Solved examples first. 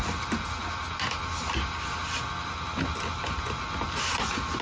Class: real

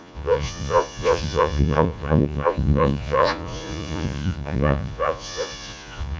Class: fake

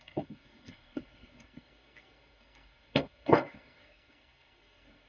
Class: fake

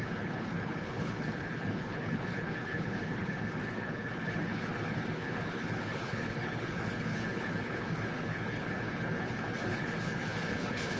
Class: fake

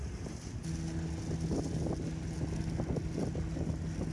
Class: real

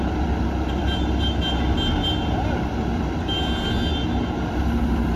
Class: real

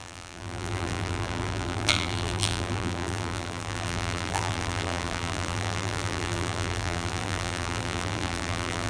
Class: fake